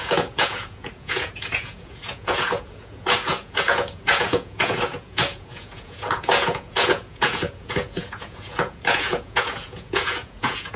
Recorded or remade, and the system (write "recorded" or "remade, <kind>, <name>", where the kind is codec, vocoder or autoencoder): remade, vocoder, Vocos